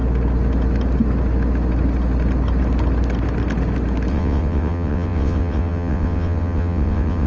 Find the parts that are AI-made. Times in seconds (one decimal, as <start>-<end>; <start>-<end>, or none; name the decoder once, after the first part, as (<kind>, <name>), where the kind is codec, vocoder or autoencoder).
4.1-7.3 (vocoder, WaveNeXt)